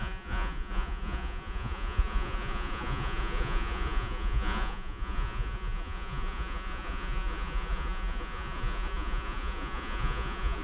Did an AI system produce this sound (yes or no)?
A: yes